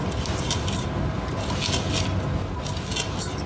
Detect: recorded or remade recorded